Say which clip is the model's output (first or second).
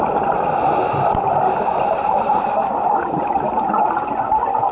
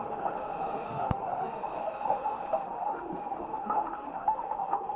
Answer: second